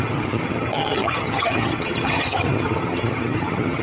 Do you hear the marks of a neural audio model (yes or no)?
yes